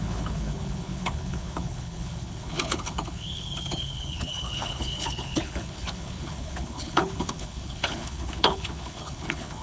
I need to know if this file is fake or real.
fake